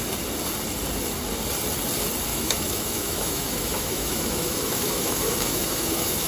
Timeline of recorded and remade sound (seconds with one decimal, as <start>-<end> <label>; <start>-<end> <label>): 0.0-2.3 recorded; 2.3-6.3 remade